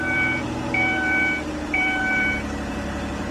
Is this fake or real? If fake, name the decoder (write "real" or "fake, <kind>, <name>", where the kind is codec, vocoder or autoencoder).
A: fake, vocoder, BigVGAN v2